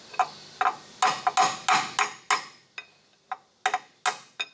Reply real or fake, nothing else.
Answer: real